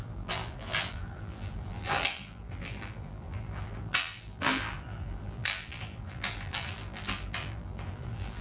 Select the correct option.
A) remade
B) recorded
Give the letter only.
A